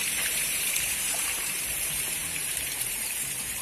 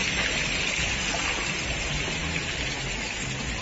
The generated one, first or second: first